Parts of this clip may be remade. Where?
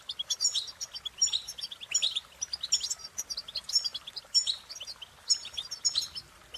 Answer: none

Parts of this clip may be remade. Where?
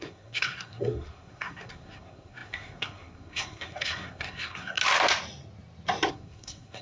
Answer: 0.0-4.8; 6.1-6.8